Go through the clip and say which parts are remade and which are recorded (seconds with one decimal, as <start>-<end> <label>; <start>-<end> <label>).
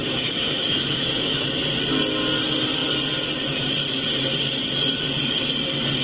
0.0-1.6 remade; 1.6-6.0 recorded